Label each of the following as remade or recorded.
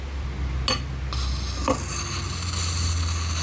recorded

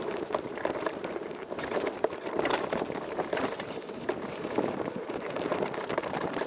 remade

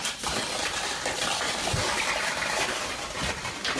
remade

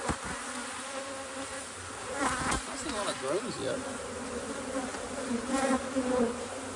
remade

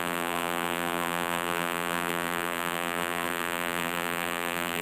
remade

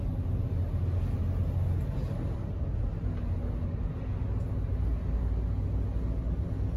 recorded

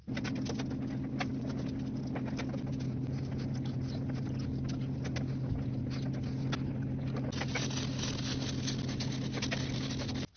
recorded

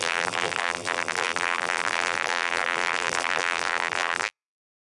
remade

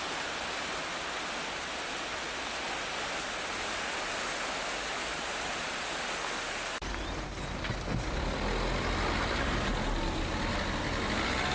recorded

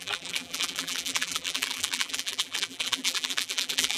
remade